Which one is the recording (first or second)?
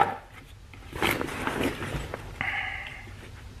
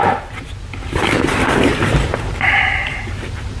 first